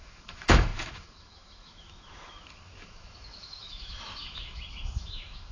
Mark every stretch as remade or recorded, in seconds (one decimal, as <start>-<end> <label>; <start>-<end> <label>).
0.0-5.5 remade